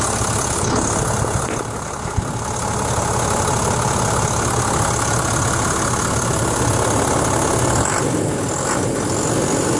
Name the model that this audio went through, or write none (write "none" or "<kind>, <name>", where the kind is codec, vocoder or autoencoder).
none